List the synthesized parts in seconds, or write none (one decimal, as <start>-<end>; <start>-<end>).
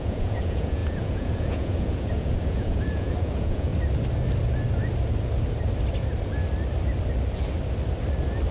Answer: 0.0-3.7